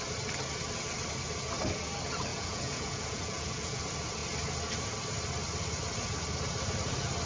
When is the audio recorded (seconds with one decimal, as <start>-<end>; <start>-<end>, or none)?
0.0-2.3; 3.8-7.3